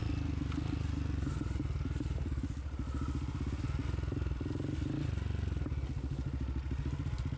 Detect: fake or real real